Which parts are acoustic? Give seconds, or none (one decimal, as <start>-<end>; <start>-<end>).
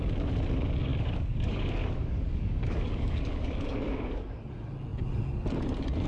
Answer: 0.0-0.9; 4.5-6.1